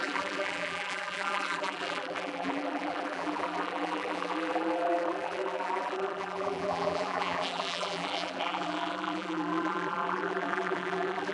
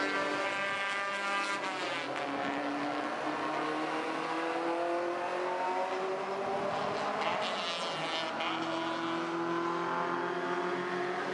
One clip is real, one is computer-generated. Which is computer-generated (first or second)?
first